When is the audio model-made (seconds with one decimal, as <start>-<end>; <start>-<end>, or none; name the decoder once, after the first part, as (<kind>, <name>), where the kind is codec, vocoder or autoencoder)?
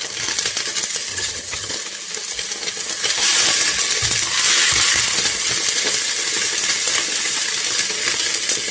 1.1-1.7 (vocoder, HiFi-GAN)